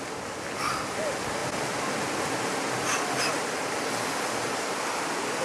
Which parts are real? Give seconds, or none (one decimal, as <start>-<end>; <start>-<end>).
0.0-5.4